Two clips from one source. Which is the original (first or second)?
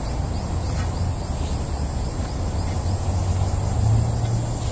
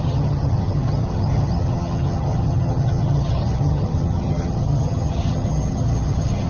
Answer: first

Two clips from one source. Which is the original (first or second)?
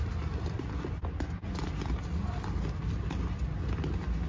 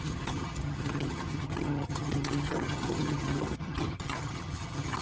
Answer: first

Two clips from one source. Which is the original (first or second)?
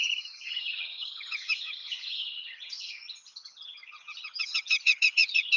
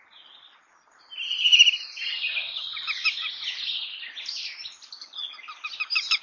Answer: second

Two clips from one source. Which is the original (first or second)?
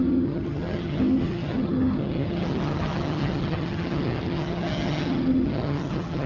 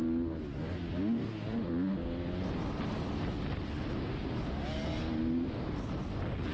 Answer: second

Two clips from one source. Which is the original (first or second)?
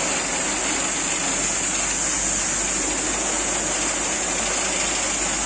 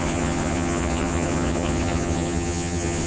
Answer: first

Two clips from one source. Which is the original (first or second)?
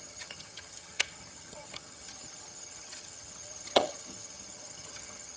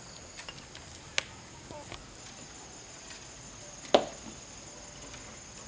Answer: second